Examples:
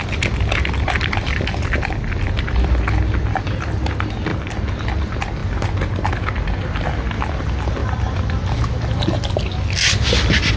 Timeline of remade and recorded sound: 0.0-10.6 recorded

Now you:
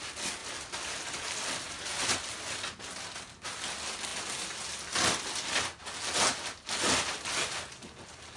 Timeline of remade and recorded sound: 0.0-8.4 recorded

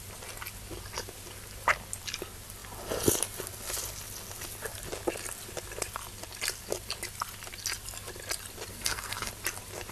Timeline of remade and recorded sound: 0.0-8.7 recorded; 8.7-9.3 remade; 9.3-9.9 recorded